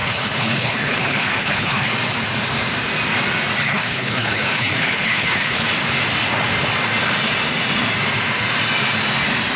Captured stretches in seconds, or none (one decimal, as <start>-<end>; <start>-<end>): 1.9-3.6; 5.7-9.6